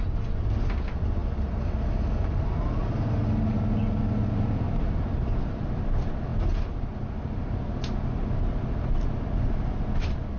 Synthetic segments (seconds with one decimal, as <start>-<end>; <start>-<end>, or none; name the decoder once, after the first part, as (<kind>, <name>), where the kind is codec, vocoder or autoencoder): none